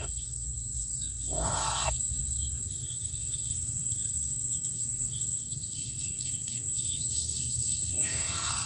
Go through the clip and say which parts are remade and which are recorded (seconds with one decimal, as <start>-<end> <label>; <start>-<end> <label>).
0.0-8.7 remade